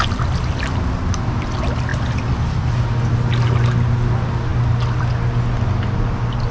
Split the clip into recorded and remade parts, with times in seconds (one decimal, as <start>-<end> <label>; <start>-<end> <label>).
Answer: 0.0-6.5 recorded